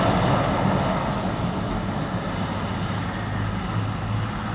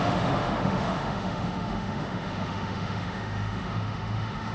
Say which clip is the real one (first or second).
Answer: first